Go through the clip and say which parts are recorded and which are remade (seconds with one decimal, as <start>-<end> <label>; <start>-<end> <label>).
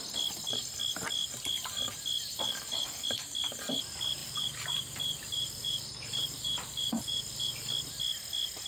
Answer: 0.0-4.2 recorded; 4.2-7.5 remade; 7.5-8.7 recorded